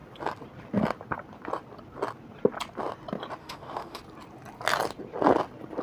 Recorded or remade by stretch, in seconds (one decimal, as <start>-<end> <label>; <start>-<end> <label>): 0.0-3.4 recorded; 3.4-4.0 remade; 4.0-5.8 recorded